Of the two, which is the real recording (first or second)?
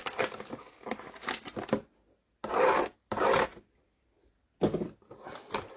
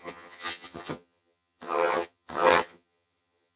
first